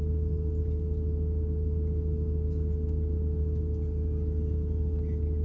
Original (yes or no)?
yes